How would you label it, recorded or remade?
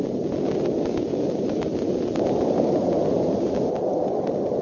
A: recorded